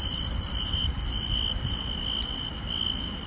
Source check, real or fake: real